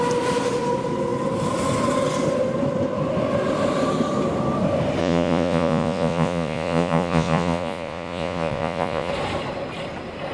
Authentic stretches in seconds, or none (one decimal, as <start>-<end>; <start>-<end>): 0.0-5.0; 9.1-10.3